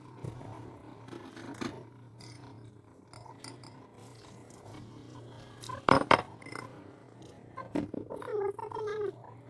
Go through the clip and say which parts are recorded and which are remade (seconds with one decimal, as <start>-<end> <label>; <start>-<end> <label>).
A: 0.0-2.5 remade; 2.5-3.3 recorded; 3.3-9.5 remade